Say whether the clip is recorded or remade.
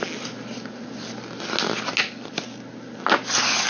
recorded